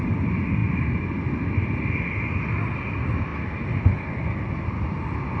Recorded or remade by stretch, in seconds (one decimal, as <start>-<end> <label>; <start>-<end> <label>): 0.0-5.4 recorded